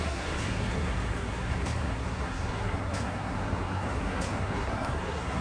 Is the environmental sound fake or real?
fake